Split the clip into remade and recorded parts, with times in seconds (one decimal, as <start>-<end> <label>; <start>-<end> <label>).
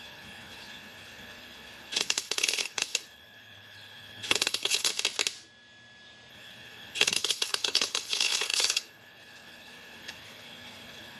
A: 0.0-4.9 remade; 4.9-6.3 recorded; 6.3-11.2 remade